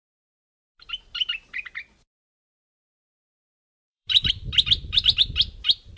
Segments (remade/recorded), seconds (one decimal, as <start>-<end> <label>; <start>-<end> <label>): 0.0-0.7 recorded; 0.7-4.3 remade; 4.3-6.0 recorded